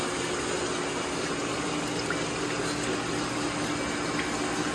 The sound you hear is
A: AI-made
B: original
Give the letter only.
B